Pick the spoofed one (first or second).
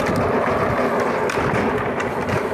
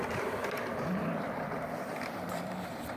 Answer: second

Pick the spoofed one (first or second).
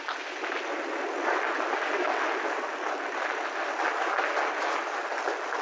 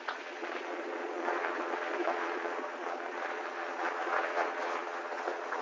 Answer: second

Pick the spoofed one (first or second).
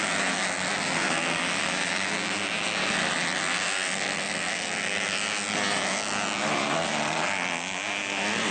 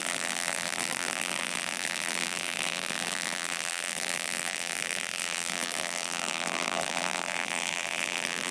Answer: second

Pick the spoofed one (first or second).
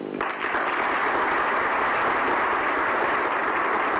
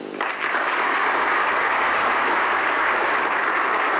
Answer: second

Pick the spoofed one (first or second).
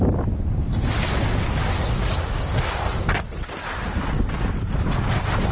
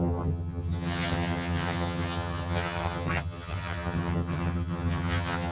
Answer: second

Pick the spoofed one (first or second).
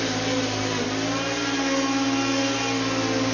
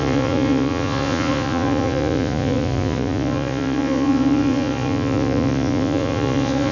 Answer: second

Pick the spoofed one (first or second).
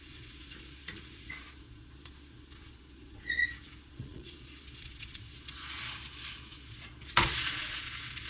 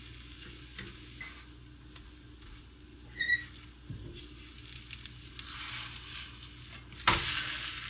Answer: first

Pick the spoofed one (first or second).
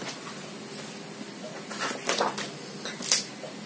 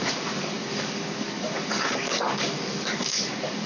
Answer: second